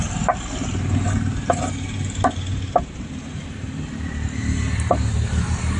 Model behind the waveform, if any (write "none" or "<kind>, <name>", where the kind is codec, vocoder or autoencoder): vocoder, BigVGAN v2